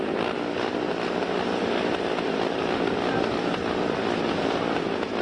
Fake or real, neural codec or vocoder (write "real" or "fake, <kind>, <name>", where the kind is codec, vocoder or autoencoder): real